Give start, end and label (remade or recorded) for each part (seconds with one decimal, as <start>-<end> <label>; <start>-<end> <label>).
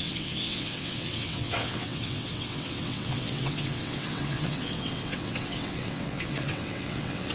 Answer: 0.0-7.3 remade